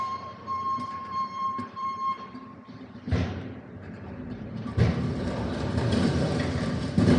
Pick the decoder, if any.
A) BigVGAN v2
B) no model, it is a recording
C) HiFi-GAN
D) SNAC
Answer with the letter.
A